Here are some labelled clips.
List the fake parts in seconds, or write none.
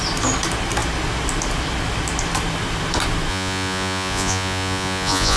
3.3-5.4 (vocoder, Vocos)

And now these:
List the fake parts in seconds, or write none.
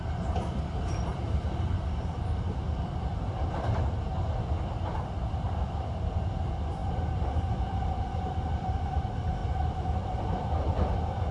0.0-1.1 (vocoder, BigVGAN v2); 1.7-3.1; 4.8-11.3